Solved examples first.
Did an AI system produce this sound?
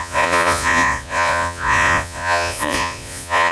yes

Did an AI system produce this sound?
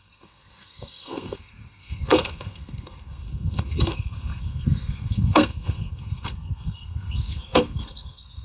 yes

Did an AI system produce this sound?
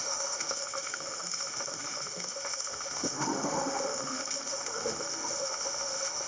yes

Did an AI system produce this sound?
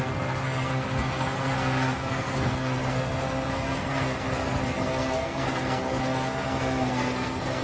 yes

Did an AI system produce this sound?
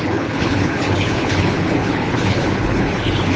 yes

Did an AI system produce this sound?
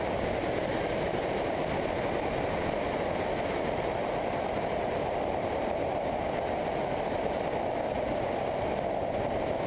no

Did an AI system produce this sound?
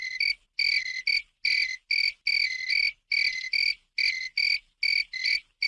no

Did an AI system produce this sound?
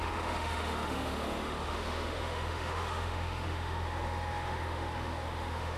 yes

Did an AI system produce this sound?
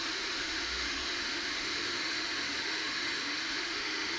yes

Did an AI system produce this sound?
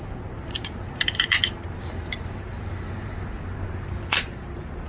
yes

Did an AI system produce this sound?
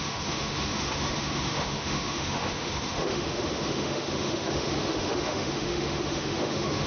yes